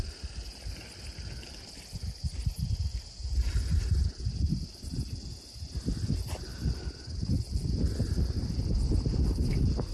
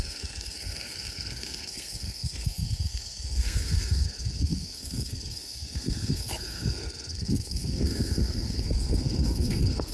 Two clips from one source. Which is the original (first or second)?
first